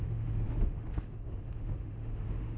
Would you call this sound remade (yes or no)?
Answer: yes